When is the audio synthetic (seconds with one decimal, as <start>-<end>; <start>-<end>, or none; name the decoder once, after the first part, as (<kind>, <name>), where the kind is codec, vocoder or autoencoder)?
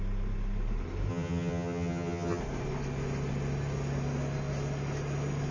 1.1-2.4 (vocoder, HiFi-GAN)